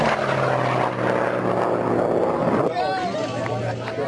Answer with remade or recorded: recorded